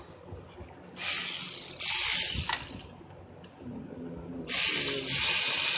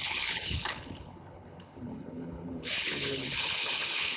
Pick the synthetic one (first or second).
second